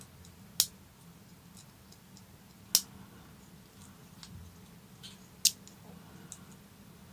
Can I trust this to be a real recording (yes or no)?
yes